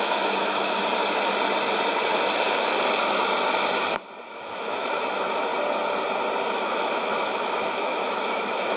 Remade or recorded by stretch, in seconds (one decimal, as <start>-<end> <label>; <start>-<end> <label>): 0.0-0.8 remade; 0.8-4.3 recorded; 4.3-5.5 remade; 5.5-6.5 recorded; 6.5-8.8 remade